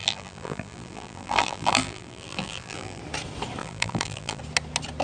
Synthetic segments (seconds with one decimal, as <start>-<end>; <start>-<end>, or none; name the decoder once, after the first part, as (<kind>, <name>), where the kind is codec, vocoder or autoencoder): 0.0-3.0 (vocoder, BigVGAN v2); 3.6-4.4